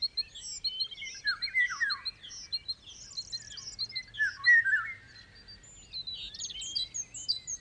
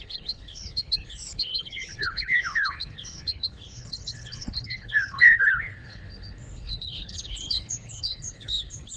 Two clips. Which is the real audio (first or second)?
first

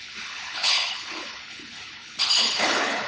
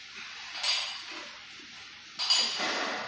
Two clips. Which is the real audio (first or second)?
second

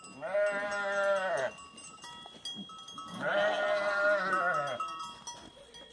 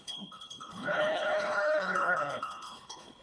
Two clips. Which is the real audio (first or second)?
first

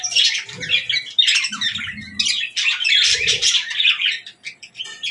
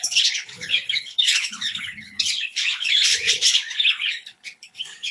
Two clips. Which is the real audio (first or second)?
first